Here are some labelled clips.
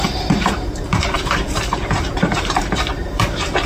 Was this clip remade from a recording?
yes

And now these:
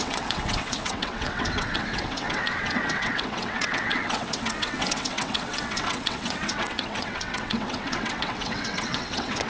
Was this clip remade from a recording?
yes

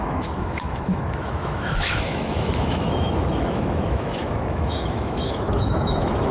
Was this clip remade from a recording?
yes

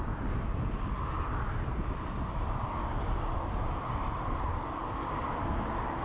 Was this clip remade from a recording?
no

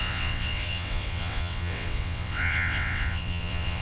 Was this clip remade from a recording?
yes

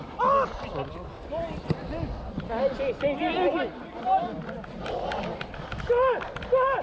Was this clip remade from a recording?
no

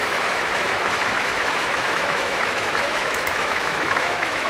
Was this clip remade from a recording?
yes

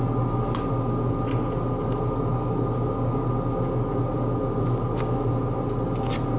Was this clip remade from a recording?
no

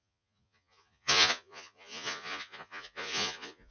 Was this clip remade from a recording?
yes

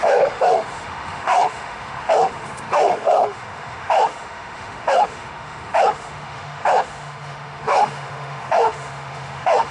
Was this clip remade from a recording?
yes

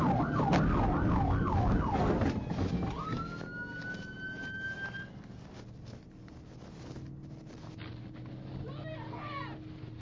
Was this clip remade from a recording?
no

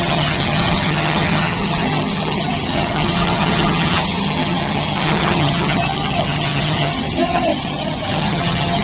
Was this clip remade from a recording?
yes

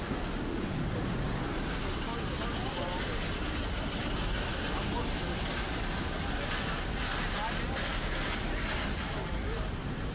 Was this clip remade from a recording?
no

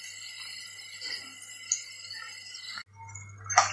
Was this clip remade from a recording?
no